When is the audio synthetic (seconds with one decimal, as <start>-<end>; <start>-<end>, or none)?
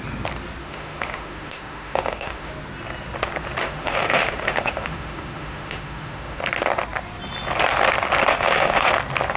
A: 0.6-2.5; 3.6-6.4; 8.3-8.9